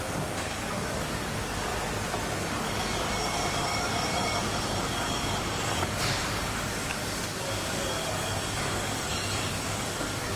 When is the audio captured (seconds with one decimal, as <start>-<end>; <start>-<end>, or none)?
1.7-2.4